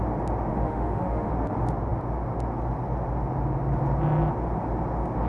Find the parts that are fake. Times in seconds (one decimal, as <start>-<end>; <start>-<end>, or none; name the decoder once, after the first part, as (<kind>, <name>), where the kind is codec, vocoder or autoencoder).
0.5-1.3 (autoencoder, DAC-VAE)